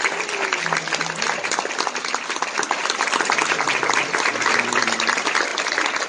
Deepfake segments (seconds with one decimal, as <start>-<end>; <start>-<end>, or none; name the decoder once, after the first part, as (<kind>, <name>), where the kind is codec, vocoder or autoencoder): none